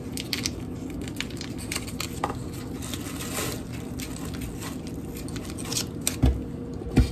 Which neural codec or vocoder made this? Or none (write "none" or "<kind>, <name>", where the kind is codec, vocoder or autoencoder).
none